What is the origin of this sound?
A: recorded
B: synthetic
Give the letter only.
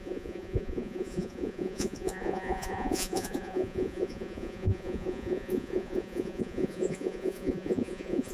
B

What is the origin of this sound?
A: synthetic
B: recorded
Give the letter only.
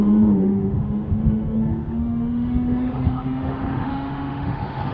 A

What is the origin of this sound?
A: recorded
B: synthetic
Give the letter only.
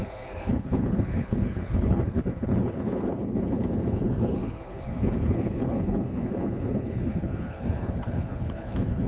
B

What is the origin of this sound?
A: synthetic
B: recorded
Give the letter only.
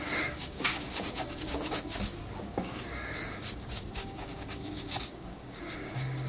A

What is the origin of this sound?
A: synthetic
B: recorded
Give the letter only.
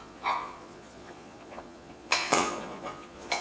A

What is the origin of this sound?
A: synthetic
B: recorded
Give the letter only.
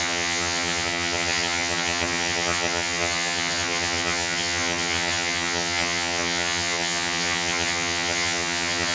A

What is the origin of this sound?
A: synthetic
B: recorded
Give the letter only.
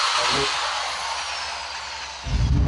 B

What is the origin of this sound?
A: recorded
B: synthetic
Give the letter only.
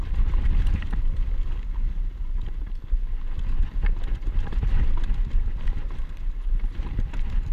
A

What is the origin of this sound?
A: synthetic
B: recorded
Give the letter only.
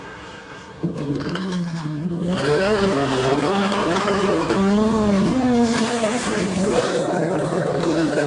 A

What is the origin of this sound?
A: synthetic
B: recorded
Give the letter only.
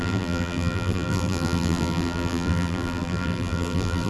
A